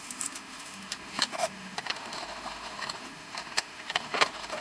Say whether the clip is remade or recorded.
remade